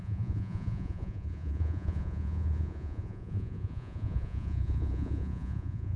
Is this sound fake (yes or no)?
yes